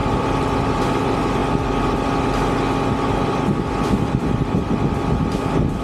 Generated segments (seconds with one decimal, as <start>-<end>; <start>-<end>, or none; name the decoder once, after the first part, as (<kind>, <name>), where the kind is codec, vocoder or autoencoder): none